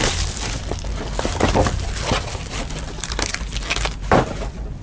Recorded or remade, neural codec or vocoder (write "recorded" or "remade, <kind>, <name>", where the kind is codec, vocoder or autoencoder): recorded